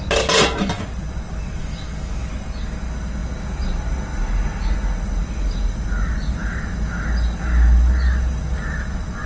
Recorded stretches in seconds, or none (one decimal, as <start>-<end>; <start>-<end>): 0.0-1.6; 2.3-9.3

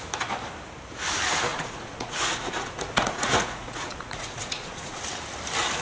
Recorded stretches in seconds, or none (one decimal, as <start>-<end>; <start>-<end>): 0.0-1.5; 5.0-5.8

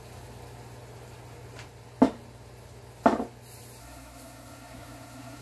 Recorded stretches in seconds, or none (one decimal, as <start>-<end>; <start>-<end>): 0.0-3.8

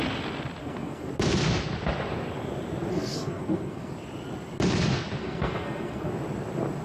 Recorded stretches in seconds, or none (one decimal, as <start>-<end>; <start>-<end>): 0.0-0.6; 1.1-2.9; 3.9-5.2; 6.1-6.8

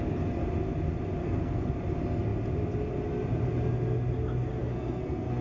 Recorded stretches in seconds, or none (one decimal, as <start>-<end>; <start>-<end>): 0.0-1.2; 1.7-4.6

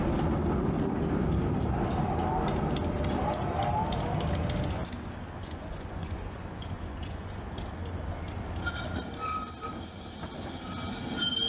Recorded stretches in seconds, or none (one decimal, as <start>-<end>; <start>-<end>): 0.0-5.4; 7.4-11.5